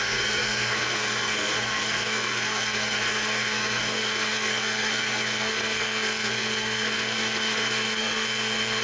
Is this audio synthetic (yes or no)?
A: yes